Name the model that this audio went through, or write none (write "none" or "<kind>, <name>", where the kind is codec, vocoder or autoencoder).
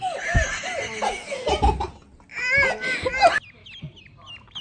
none